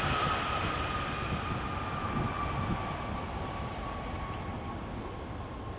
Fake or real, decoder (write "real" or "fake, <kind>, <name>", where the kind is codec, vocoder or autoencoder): real